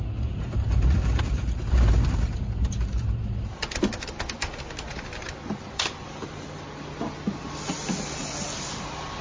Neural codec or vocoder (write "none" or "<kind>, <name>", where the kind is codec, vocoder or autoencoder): none